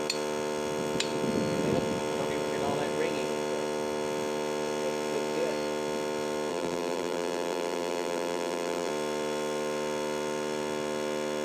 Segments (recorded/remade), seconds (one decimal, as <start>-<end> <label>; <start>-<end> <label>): 0.0-6.5 recorded; 6.5-8.9 remade; 8.9-11.4 recorded